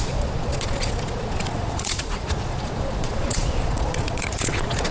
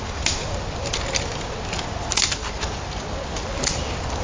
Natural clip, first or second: second